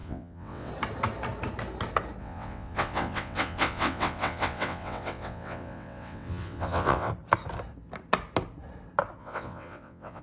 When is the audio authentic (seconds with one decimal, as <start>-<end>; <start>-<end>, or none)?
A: 0.7-2.2; 7.1-9.2